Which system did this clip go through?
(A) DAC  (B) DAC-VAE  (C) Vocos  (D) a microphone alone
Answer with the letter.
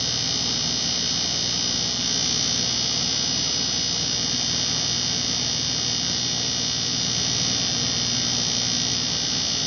D